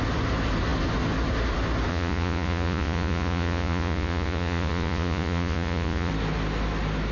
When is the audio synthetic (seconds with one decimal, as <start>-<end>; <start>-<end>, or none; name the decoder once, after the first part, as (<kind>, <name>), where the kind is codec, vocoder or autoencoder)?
1.9-6.1 (vocoder, Vocos)